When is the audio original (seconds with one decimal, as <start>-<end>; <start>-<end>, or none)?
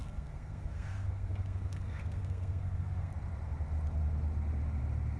3.1-5.2